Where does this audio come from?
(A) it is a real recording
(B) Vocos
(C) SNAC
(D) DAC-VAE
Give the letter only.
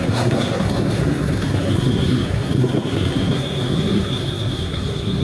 C